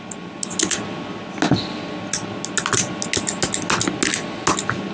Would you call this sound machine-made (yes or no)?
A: no